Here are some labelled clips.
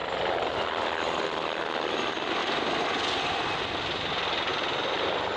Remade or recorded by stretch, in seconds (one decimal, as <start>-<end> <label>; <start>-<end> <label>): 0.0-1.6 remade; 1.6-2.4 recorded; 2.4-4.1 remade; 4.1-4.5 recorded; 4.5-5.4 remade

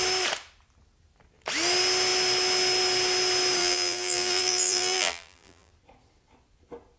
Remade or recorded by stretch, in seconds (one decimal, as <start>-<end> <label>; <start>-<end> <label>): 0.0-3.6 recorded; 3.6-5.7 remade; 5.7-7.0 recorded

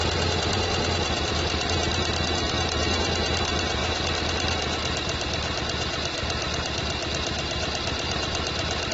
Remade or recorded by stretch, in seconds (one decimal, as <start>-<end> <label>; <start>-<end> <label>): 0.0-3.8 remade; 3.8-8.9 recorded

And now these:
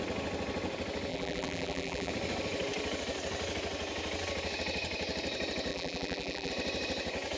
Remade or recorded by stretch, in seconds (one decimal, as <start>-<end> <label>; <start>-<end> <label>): 0.0-1.1 recorded; 1.1-2.1 remade; 2.1-5.7 recorded; 5.7-6.5 remade; 6.5-7.4 recorded

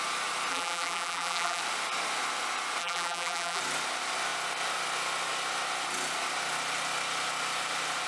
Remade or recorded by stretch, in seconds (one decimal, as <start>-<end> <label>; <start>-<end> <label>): 0.0-0.5 recorded; 0.5-1.6 remade; 1.6-2.8 recorded; 2.8-3.6 remade; 3.6-8.1 recorded

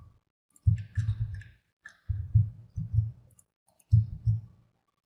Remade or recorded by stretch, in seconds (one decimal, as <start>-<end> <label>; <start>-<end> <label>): 0.0-1.0 recorded; 1.0-2.5 remade; 2.5-3.1 recorded; 3.1-4.1 remade; 4.1-5.1 recorded